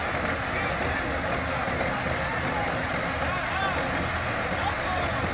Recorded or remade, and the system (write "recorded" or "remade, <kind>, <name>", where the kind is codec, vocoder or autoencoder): recorded